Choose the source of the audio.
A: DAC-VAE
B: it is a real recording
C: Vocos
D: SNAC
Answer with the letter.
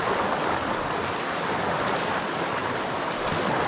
B